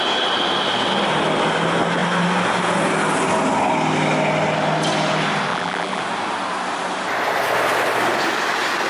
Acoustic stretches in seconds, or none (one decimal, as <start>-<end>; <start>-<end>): 0.0-5.5; 6.0-8.9